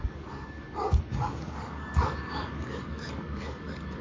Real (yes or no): no